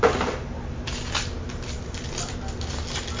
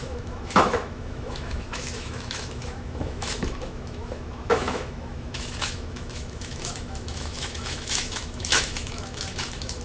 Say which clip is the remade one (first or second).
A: second